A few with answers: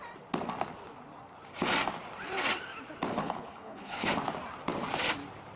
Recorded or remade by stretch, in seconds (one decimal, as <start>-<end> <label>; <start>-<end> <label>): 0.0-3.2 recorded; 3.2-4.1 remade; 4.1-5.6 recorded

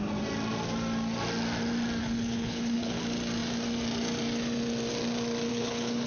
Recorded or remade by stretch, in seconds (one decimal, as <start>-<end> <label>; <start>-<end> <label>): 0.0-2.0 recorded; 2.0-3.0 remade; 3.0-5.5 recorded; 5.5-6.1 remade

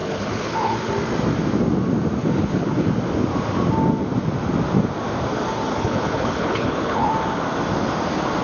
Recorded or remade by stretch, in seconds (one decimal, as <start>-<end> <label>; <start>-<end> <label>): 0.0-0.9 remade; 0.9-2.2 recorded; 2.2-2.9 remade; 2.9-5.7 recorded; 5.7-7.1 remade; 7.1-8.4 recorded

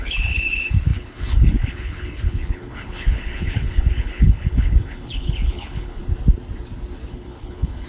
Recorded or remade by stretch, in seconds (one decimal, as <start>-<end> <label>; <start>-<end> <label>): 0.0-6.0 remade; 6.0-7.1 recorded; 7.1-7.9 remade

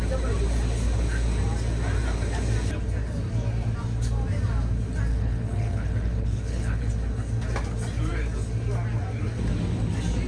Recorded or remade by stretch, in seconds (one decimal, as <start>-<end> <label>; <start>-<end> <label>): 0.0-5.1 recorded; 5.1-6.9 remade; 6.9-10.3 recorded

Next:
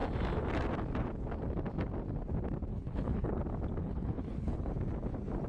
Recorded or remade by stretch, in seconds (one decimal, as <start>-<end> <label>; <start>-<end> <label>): 0.0-2.7 recorded; 2.7-3.4 remade; 3.4-3.8 recorded; 3.8-4.6 remade; 4.6-5.5 recorded

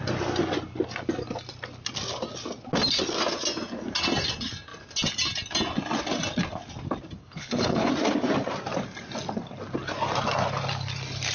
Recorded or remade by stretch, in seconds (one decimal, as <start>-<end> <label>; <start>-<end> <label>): 0.0-7.2 recorded; 7.2-7.9 remade; 7.9-11.3 recorded

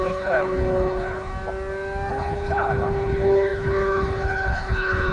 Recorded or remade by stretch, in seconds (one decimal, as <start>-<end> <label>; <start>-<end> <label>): 0.0-1.3 remade; 1.3-2.1 recorded; 2.1-5.1 remade